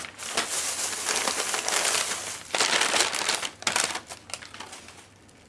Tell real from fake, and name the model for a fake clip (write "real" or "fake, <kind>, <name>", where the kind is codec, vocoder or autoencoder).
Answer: real